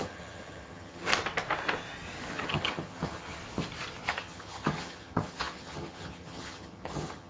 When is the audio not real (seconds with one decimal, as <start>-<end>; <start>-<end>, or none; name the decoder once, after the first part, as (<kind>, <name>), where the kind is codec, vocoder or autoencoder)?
0.0-1.1 (vocoder, HiFi-GAN); 2.3-3.4; 4.1-7.3